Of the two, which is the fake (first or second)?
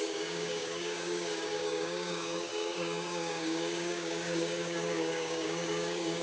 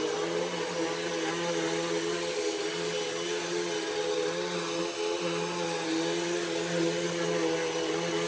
first